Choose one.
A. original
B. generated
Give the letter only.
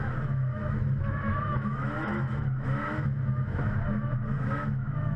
B